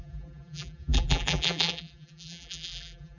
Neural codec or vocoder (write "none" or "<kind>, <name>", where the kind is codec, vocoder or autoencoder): vocoder, BigVGAN v2